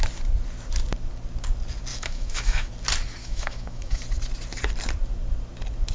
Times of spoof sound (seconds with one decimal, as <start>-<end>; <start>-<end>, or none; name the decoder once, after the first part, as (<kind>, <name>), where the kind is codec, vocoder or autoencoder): 1.9-2.7 (autoencoder, DAC-VAE); 3.2-4.0